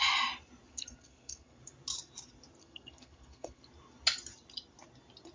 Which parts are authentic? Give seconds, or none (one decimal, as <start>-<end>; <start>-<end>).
0.0-0.7; 1.6-2.6; 3.6-5.3